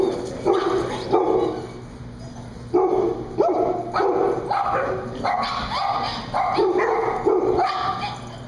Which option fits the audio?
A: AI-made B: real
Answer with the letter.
B